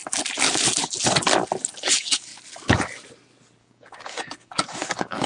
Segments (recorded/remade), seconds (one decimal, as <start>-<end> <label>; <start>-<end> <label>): 0.0-1.8 recorded; 1.8-2.3 remade; 2.3-3.6 recorded; 3.6-5.3 remade